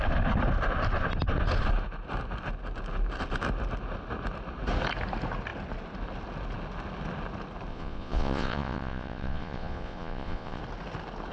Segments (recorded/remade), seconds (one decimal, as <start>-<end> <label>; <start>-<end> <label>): 0.0-7.7 recorded; 7.7-10.6 remade; 10.6-11.3 recorded